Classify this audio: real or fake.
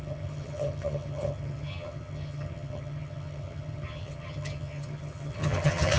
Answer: fake